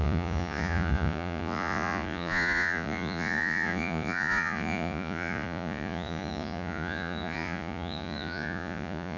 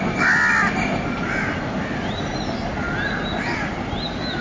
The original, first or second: second